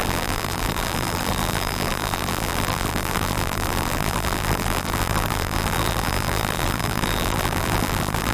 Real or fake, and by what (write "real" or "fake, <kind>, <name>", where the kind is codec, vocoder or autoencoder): fake, vocoder, BigVGAN v2